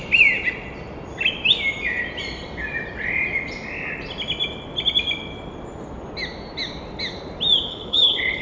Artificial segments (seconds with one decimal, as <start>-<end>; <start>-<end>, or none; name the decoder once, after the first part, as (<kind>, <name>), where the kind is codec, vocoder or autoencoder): 7.7-8.4 (codec, HILCodec)